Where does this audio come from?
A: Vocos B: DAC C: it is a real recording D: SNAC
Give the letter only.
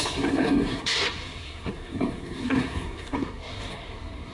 D